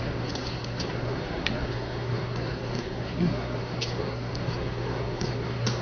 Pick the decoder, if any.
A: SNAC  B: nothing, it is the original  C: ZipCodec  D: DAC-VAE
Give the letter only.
A